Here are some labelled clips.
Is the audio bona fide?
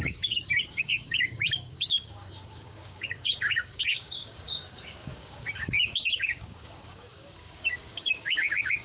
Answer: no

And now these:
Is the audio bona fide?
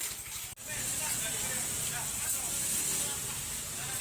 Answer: yes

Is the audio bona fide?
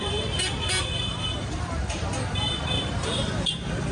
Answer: no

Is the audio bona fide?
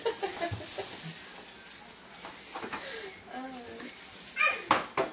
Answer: yes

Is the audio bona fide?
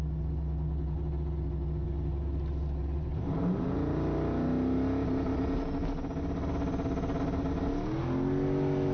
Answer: yes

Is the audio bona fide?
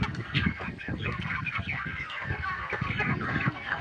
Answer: no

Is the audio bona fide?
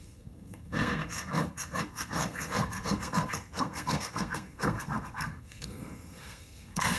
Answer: no